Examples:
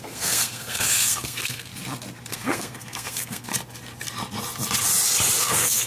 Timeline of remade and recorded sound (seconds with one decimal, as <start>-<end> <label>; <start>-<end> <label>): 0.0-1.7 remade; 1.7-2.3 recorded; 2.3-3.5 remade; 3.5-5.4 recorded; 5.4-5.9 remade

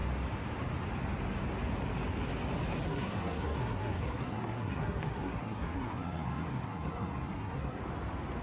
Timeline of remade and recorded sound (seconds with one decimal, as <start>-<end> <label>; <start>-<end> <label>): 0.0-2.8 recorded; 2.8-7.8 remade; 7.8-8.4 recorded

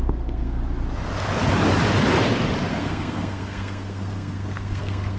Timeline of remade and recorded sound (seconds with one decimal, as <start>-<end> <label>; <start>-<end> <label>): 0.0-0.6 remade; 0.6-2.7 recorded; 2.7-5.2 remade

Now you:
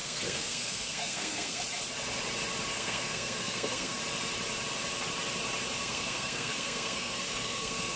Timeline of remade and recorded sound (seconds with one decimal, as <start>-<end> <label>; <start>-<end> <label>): 0.0-1.6 remade; 1.6-2.7 recorded; 2.7-4.0 remade; 4.0-5.8 recorded; 5.8-8.0 remade

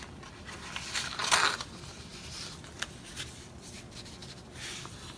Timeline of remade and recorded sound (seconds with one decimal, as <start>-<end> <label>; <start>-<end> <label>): 0.0-5.2 recorded

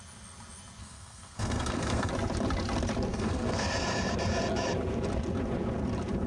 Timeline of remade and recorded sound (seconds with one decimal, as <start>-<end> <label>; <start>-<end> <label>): 0.0-0.8 recorded; 0.8-2.1 remade; 2.1-3.1 recorded; 3.1-3.7 remade; 3.7-6.3 recorded

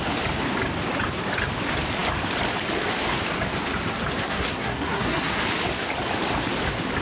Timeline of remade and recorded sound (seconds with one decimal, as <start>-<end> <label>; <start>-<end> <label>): 0.0-4.2 recorded; 4.2-5.4 remade; 5.4-7.0 recorded